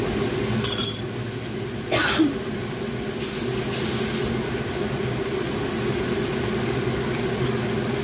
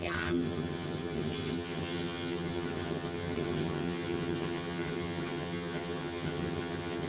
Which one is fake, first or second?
second